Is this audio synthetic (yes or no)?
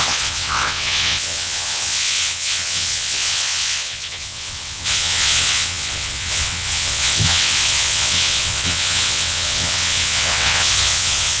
yes